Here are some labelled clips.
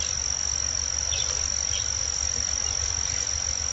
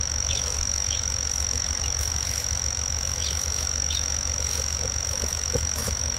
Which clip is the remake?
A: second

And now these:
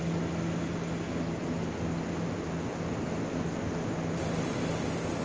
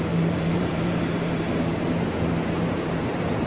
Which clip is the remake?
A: second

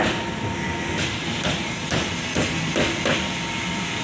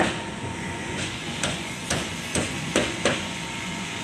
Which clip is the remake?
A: second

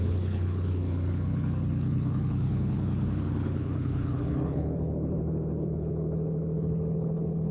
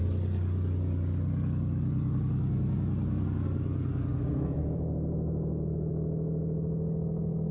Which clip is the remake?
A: first